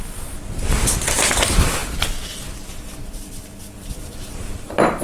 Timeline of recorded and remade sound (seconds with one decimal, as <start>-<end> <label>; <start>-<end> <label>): 0.0-5.0 recorded